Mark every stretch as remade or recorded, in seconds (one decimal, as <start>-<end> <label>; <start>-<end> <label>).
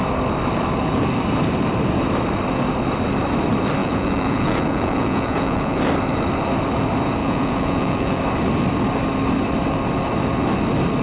0.0-3.8 recorded; 3.8-5.8 remade; 5.8-7.2 recorded; 7.2-8.2 remade; 8.2-11.0 recorded